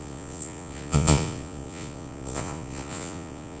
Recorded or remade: remade